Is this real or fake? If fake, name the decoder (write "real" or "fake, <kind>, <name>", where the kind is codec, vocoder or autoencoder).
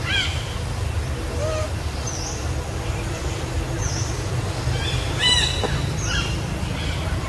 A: real